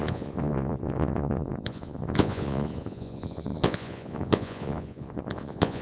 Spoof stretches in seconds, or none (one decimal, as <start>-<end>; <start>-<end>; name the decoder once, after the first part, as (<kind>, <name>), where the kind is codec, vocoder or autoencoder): 0.0-5.8 (vocoder, Vocos)